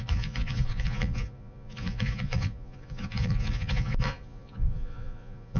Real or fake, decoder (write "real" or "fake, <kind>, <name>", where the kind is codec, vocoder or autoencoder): fake, vocoder, Vocos